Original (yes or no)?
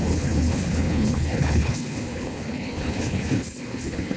no